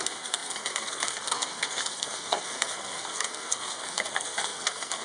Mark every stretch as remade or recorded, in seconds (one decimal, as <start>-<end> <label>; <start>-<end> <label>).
0.0-5.0 remade